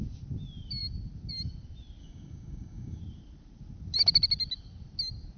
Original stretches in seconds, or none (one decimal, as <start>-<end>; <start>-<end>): 0.0-2.0; 3.0-5.4